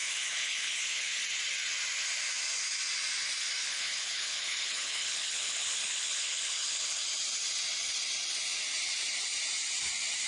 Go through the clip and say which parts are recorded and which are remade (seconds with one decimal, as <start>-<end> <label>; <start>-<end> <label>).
0.0-1.2 remade; 1.2-3.6 recorded; 3.6-7.0 remade; 7.0-10.3 recorded